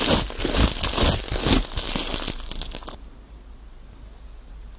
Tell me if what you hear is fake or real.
real